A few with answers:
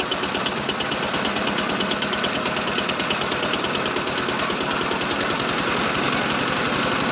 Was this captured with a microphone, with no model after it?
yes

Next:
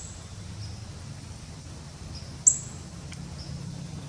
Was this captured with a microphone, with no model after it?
yes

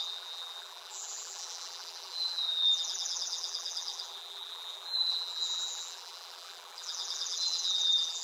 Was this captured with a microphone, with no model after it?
no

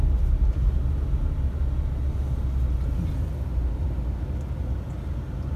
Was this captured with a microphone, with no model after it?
yes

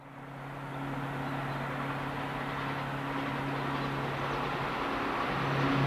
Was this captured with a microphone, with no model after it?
yes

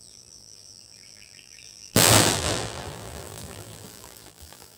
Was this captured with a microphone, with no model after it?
no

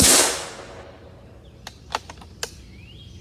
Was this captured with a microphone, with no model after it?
yes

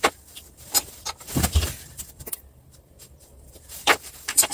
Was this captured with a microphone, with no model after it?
no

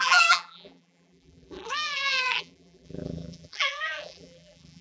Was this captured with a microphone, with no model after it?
no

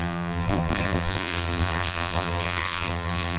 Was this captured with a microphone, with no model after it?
no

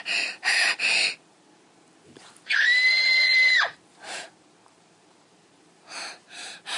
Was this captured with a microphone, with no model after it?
no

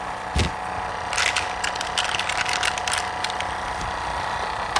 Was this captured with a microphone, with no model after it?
yes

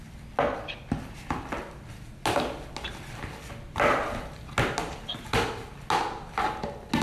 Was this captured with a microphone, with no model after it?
yes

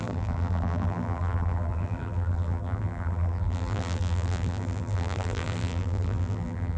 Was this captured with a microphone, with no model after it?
no